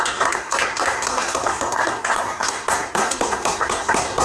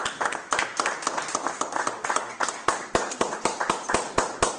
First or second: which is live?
second